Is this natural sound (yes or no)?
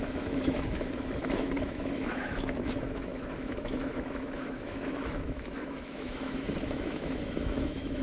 no